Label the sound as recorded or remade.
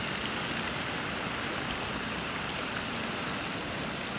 recorded